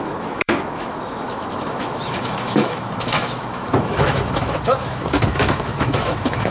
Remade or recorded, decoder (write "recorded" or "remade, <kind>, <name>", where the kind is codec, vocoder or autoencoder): remade, autoencoder, DAC-VAE